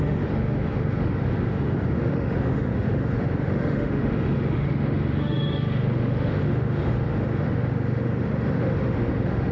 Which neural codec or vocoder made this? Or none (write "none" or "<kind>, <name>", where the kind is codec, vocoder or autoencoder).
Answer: autoencoder, DAC-VAE